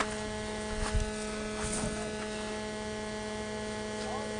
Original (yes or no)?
yes